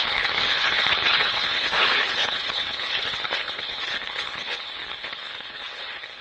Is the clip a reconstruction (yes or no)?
yes